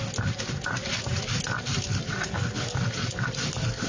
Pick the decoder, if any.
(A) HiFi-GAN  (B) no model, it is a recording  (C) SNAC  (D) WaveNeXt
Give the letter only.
B